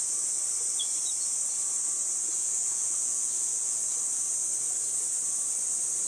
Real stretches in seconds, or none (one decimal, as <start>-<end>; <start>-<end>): 0.0-2.2; 3.8-6.1